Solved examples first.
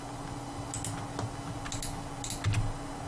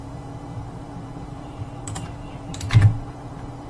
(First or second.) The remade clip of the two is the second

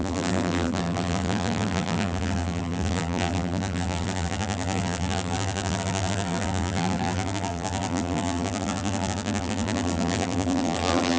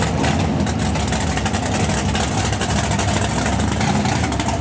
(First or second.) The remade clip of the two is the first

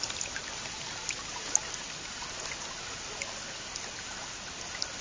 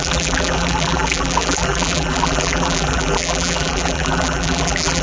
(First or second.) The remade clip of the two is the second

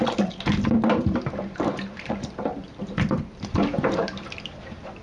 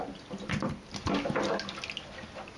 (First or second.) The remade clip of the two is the first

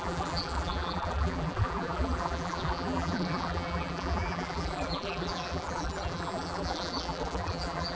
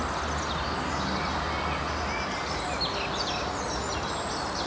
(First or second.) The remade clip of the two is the first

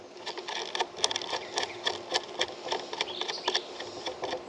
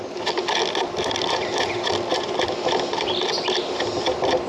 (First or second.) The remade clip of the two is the second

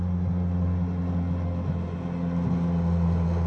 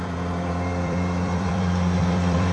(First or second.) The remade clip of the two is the second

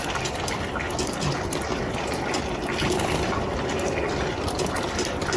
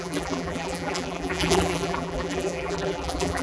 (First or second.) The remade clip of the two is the second